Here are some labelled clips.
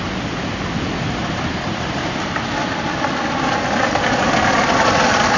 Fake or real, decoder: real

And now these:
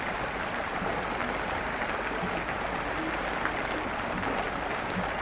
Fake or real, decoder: real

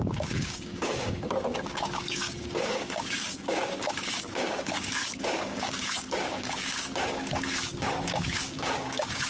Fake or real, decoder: fake, codec, DAC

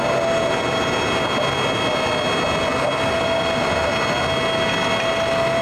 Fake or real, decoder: real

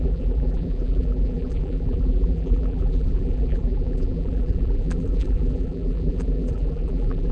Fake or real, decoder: fake, vocoder, BigVGAN v2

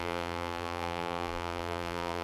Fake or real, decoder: fake, vocoder, BigVGAN v2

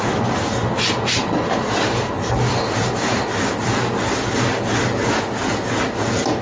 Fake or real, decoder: real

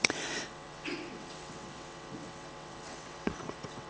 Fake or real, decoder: fake, vocoder, WaveNeXt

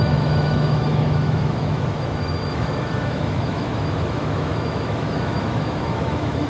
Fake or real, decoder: fake, autoencoder, DAC-VAE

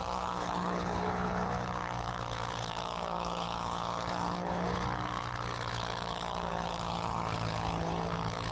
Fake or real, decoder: fake, codec, HILCodec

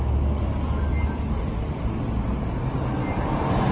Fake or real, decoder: real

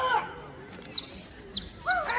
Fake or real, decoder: real